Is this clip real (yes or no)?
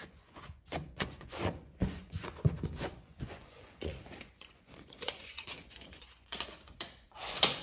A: no